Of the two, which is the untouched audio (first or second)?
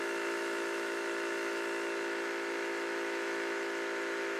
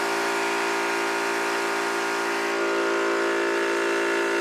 second